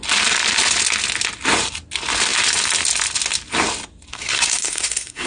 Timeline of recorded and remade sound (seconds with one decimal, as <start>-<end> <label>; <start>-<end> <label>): 0.0-4.1 recorded; 4.1-5.3 remade